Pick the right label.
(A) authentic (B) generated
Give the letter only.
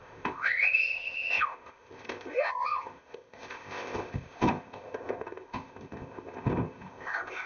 B